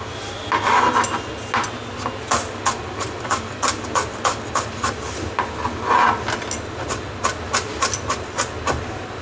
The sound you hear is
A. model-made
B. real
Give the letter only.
B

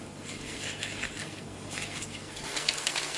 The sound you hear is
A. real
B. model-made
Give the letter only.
B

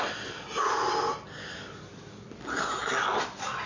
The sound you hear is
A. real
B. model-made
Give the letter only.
A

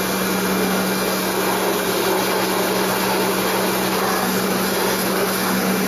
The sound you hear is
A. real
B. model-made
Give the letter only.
A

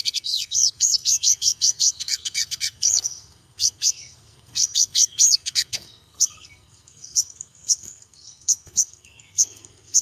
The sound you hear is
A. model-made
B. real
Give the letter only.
A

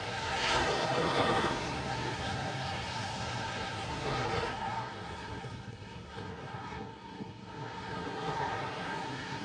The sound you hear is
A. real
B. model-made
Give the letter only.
B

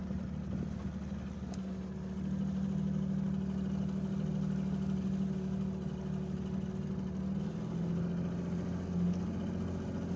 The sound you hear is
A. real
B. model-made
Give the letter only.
A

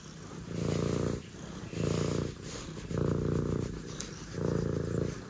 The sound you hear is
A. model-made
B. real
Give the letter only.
B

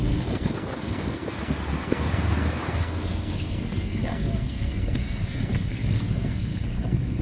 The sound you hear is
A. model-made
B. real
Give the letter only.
A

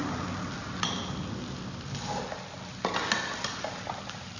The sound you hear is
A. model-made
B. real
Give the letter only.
B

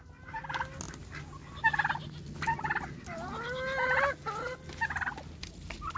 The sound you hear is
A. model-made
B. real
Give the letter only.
B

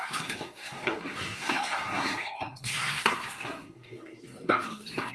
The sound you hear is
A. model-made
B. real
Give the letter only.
A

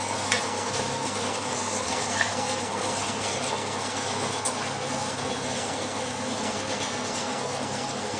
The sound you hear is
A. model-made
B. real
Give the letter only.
A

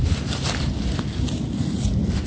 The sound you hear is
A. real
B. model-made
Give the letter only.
A